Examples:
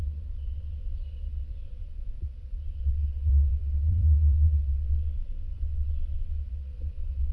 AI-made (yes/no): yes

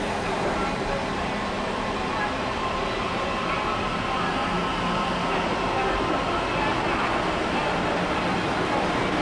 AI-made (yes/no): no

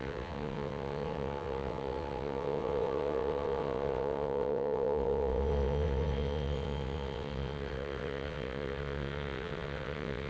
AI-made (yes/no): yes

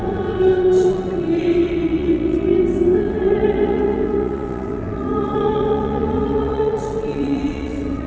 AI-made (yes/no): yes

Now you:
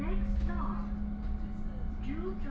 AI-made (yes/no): no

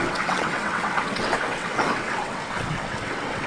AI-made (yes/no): yes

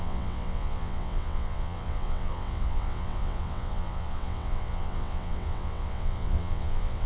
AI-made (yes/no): yes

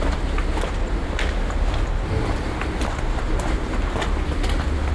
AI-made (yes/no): no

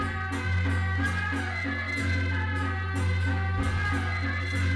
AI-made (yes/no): no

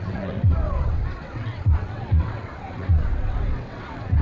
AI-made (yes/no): yes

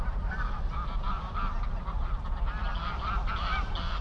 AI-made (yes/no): no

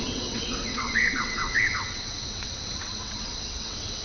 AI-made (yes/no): yes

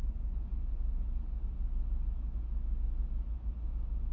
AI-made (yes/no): no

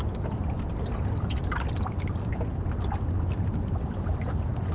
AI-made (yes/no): no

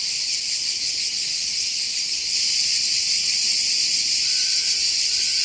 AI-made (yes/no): yes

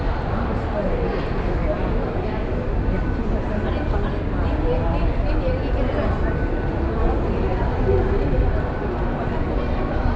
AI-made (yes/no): no